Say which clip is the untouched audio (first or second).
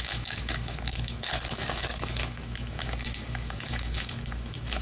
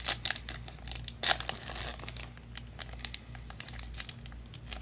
second